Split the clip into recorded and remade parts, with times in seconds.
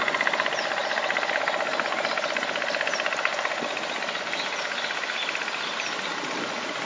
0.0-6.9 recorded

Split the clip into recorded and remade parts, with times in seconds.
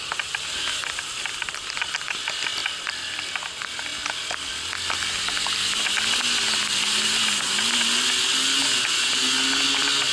0.0-10.1 recorded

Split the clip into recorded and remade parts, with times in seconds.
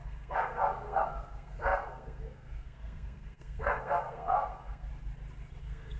0.0-4.9 remade; 4.9-5.6 recorded; 5.6-6.0 remade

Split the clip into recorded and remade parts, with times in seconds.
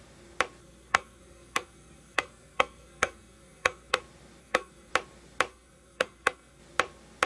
0.0-0.6 recorded; 0.6-4.0 remade; 4.0-4.4 recorded; 4.4-4.9 remade; 4.9-5.5 recorded; 5.5-6.6 remade; 6.6-7.3 recorded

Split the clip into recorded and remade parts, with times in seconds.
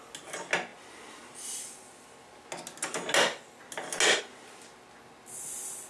0.0-5.9 recorded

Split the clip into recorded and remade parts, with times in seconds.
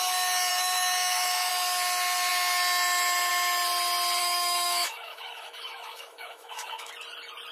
0.0-0.5 recorded; 0.5-1.5 remade; 1.5-4.2 recorded; 4.2-6.9 remade; 6.9-7.5 recorded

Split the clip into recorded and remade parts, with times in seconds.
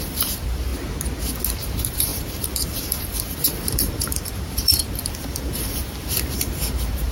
0.0-0.7 remade; 0.7-1.6 recorded; 1.6-7.1 remade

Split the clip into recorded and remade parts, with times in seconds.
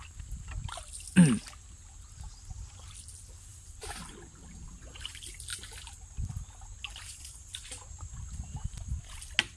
0.0-9.6 recorded